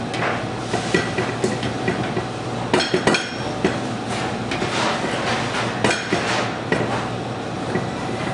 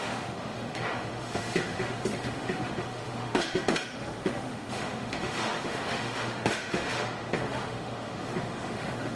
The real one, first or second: first